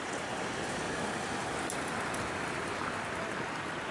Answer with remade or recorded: recorded